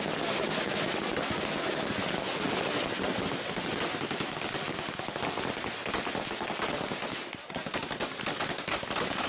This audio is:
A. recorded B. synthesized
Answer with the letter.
A